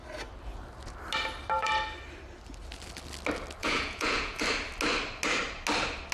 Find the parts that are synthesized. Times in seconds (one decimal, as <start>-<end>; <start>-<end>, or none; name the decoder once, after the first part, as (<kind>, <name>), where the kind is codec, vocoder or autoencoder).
3.6-4.4 (vocoder, Vocos)

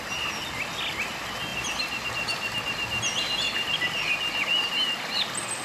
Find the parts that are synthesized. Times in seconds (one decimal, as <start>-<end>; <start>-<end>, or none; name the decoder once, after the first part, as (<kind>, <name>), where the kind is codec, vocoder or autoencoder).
1.5-4.7 (vocoder, BigVGAN v2)